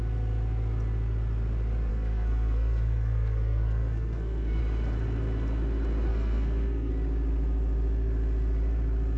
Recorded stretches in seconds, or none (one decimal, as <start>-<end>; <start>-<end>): 0.0-1.9; 4.6-6.1; 6.9-9.2